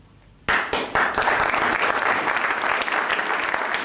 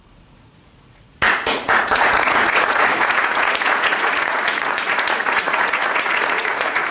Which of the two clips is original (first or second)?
first